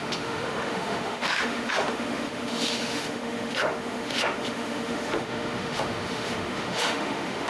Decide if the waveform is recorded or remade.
remade